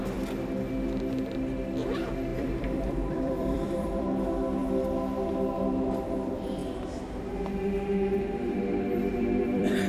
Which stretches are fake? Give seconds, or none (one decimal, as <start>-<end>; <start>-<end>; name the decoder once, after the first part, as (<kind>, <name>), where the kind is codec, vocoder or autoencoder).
2.3-4.0 (vocoder, BigVGAN v2); 9.1-9.9